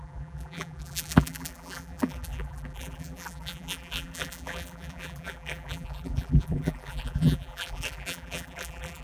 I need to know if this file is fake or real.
fake